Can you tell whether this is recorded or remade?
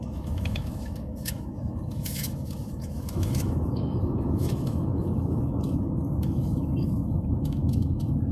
remade